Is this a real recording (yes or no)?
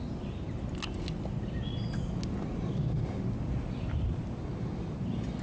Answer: yes